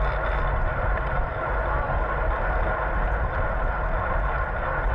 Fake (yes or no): no